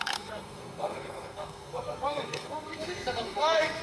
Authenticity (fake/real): fake